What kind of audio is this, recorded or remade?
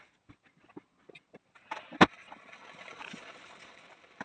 recorded